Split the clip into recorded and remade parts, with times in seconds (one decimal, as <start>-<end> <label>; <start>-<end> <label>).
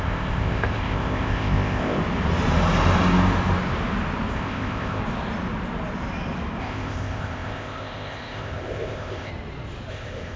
0.0-2.0 remade; 2.0-4.3 recorded; 4.3-5.0 remade; 5.0-6.6 recorded; 6.6-9.3 remade; 9.3-9.9 recorded; 9.9-10.4 remade